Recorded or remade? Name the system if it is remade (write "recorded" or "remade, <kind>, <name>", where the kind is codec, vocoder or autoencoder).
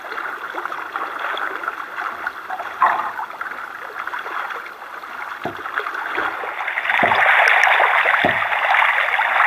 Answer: recorded